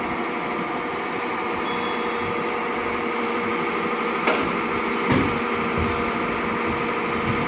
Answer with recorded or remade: recorded